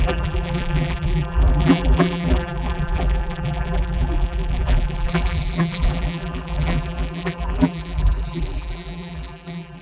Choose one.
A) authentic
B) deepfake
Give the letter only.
B